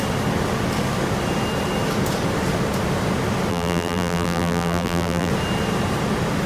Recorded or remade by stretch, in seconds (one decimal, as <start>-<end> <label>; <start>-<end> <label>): 0.0-3.5 recorded; 3.5-5.3 remade; 5.3-6.5 recorded